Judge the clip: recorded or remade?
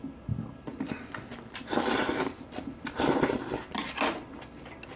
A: recorded